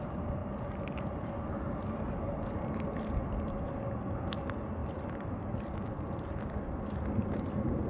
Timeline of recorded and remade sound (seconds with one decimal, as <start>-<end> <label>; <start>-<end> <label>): 0.0-7.9 recorded